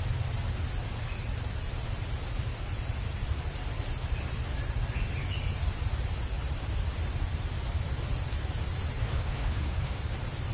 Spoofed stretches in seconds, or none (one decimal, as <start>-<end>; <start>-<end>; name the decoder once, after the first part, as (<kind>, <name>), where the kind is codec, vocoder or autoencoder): 9.0-10.0 (codec, SNAC)